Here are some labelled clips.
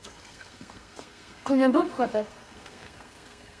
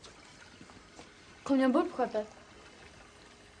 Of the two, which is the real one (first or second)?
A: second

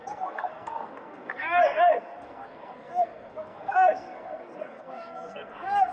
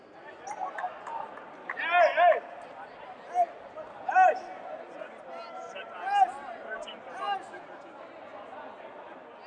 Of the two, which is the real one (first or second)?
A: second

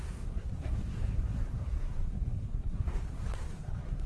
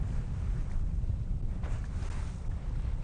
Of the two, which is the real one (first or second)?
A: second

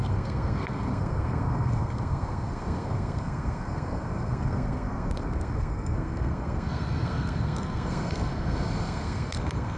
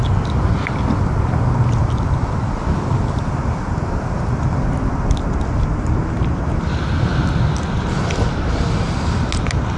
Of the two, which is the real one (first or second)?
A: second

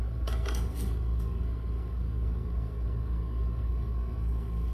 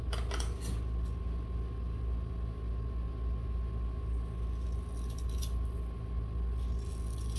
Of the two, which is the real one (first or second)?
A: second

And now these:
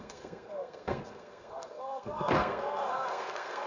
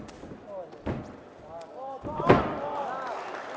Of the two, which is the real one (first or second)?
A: second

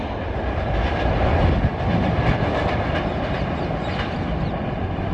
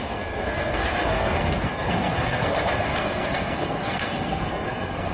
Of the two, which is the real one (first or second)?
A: first